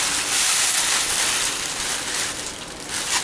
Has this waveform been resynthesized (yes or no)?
no